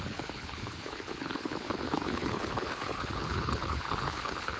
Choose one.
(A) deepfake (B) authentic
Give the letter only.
A